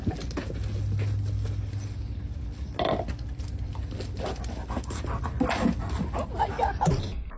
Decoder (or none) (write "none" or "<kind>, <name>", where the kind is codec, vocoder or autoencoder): none